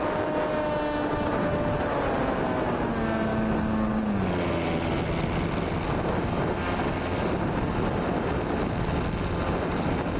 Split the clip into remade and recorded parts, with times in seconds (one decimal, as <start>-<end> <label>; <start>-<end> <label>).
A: 0.0-10.2 recorded